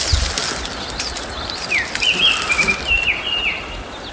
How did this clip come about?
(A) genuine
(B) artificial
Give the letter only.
A